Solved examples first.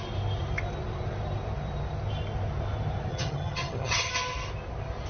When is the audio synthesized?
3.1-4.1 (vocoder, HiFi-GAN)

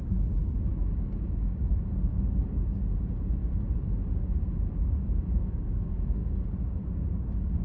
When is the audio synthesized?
0.0-3.4 (codec, DAC); 5.0-6.2; 6.9-7.6

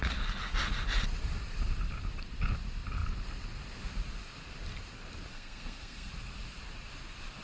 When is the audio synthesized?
5.3-6.1 (codec, SNAC)

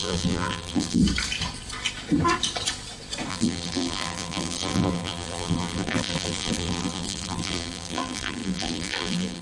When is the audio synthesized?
0.0-1.0 (vocoder, BigVGAN v2); 3.3-9.4